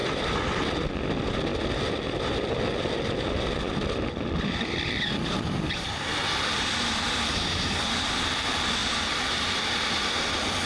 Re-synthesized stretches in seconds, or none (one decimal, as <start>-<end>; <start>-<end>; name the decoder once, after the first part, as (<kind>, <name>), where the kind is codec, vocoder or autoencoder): none